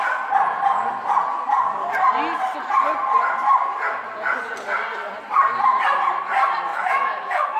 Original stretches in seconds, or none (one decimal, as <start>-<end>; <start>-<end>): 0.0-6.7